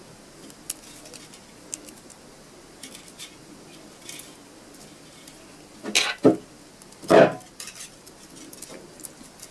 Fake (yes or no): no